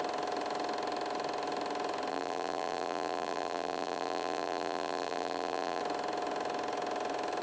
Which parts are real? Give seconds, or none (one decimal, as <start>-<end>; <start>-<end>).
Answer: 0.0-2.1; 5.8-7.4